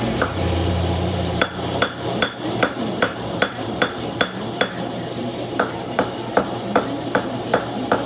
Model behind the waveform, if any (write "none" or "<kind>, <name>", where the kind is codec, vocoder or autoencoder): vocoder, BigVGAN v2